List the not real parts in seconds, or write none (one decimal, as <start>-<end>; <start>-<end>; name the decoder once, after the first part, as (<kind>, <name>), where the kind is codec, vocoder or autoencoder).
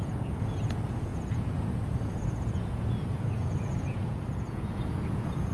0.0-5.5 (vocoder, Vocos)